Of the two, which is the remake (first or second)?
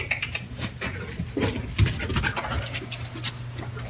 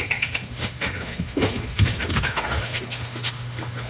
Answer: second